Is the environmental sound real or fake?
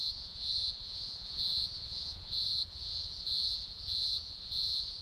fake